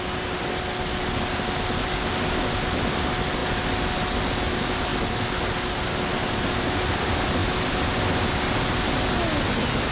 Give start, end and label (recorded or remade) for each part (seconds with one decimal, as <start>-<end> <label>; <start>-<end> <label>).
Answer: 0.0-9.9 recorded